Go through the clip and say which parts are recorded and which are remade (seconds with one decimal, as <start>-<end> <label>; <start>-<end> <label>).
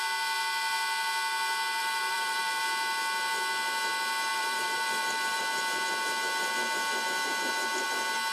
0.0-1.8 recorded; 1.8-2.6 remade; 2.6-4.3 recorded; 4.3-5.4 remade; 5.4-8.3 recorded